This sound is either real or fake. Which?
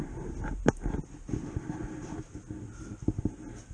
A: real